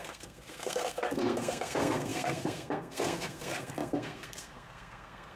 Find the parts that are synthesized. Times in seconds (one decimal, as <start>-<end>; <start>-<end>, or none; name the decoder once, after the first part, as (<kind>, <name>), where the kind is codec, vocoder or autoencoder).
0.0-5.4 (codec, SNAC)